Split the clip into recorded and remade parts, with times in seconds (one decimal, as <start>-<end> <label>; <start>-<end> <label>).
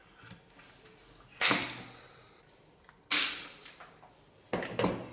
0.0-5.1 recorded